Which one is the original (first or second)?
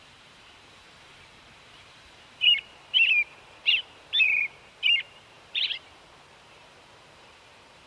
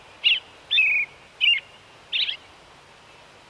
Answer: second